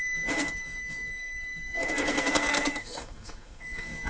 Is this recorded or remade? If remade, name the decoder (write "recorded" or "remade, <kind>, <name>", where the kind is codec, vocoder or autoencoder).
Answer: remade, codec, SNAC